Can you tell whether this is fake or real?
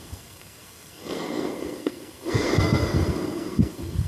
fake